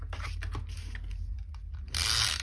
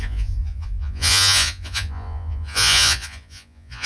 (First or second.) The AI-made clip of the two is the second